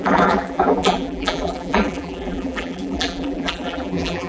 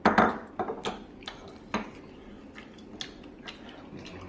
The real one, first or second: second